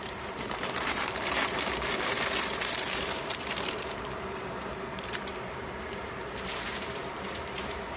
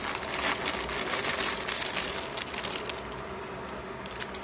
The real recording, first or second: second